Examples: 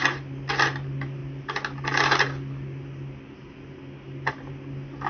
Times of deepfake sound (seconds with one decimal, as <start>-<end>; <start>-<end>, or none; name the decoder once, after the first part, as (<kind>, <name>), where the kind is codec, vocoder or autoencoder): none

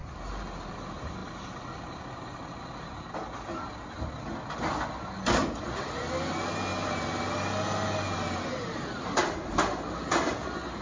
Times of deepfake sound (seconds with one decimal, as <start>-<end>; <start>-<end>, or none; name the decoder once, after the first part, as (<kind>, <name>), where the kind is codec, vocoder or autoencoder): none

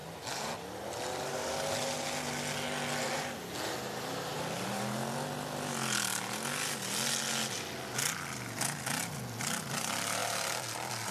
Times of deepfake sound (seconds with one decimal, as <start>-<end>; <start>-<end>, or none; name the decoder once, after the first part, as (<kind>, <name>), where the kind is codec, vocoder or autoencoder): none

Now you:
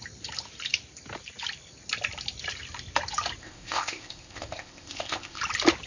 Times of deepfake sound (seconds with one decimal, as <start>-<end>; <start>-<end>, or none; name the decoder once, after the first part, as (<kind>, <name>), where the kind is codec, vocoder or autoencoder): 3.4-5.4 (codec, ZipCodec)